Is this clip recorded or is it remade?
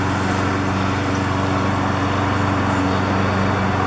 recorded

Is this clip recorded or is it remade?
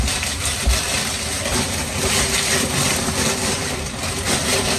recorded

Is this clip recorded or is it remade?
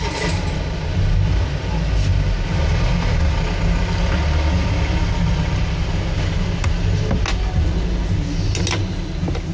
recorded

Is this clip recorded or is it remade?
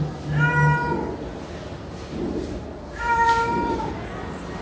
recorded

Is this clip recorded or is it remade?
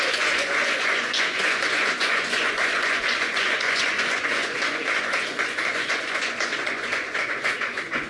remade